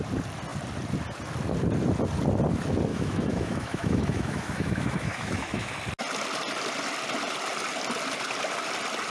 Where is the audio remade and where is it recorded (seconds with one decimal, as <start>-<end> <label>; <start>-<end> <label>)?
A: 0.0-2.9 recorded; 2.9-5.7 remade; 5.7-9.1 recorded